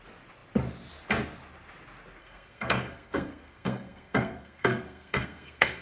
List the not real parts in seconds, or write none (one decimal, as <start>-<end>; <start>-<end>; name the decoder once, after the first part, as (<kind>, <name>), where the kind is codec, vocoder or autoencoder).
2.2-5.8 (codec, SNAC)